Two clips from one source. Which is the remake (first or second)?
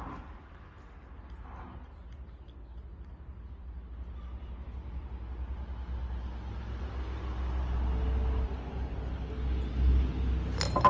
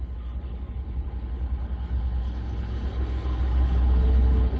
second